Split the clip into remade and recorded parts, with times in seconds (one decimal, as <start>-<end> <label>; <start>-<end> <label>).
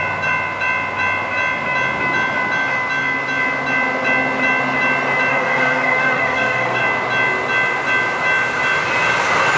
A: 0.0-5.3 recorded; 5.3-6.8 remade; 6.8-9.6 recorded